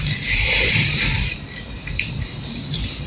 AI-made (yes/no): yes